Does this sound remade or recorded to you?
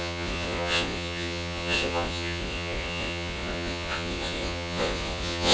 remade